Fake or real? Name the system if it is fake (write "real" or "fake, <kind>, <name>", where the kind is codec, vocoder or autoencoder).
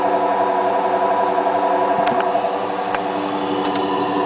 real